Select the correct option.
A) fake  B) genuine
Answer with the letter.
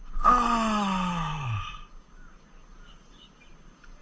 B